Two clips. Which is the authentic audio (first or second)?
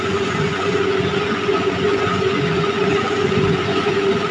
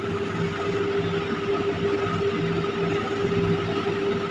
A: second